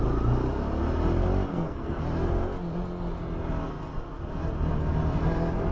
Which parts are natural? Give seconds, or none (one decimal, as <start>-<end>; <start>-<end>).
0.0-1.5; 2.0-5.7